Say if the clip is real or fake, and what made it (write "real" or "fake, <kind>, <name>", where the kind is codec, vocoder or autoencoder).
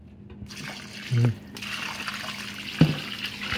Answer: real